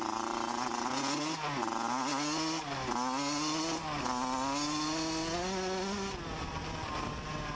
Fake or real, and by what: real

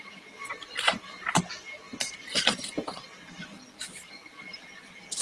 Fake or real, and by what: real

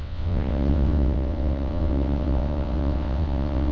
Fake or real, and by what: fake, vocoder, WaveNeXt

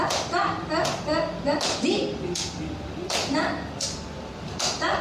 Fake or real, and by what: real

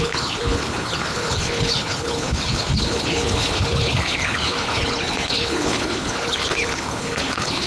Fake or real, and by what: fake, codec, HILCodec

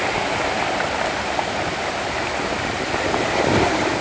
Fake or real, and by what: real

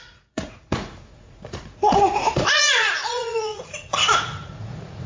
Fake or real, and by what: fake, vocoder, Vocos